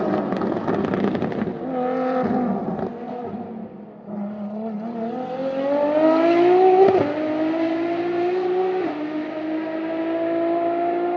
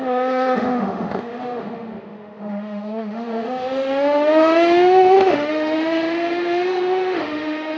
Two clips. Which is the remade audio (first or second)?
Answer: second